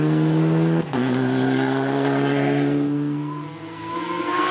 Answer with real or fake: fake